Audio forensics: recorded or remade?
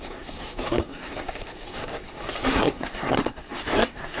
remade